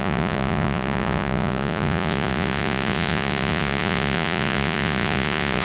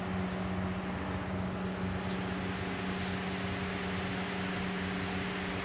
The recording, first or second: second